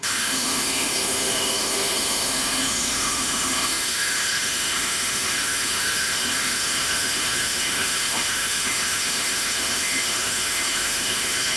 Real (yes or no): no